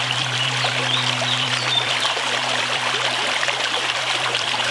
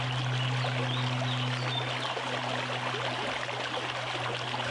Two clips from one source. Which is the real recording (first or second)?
second